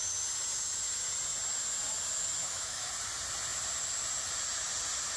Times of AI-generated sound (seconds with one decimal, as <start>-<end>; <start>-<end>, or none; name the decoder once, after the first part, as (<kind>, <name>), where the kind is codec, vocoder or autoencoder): 2.4-2.9 (autoencoder, DAC-VAE)